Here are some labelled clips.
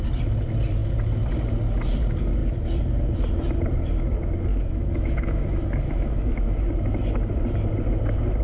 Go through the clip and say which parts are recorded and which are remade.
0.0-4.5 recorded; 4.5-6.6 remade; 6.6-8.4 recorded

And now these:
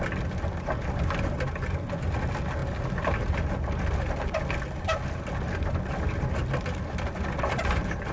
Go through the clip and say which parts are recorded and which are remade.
0.0-8.1 recorded

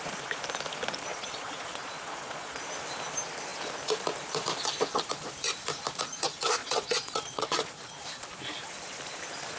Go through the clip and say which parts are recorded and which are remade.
0.0-1.1 recorded; 1.1-2.6 remade; 2.6-6.6 recorded; 6.6-7.6 remade; 7.6-9.6 recorded

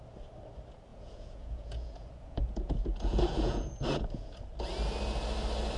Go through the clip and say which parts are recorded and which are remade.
0.0-0.9 recorded; 0.9-4.4 remade; 4.4-5.8 recorded